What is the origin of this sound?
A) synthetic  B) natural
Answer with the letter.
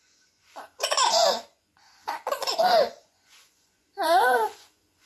A